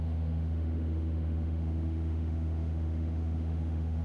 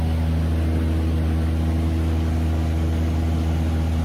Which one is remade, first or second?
first